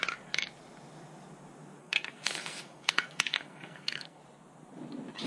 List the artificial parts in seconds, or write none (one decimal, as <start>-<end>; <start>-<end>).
1.8-4.2